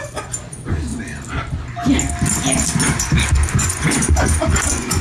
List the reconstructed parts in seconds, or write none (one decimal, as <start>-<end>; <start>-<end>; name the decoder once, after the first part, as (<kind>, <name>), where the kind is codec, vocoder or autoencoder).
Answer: 0.0-0.9 (vocoder, Vocos); 3.6-5.0